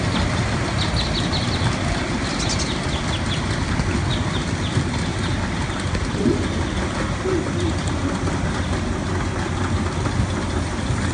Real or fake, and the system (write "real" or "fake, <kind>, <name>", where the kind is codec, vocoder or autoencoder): real